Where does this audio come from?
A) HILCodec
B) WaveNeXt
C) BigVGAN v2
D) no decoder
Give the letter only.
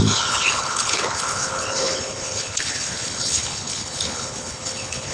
A